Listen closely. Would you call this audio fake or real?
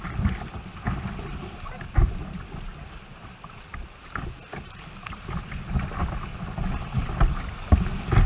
real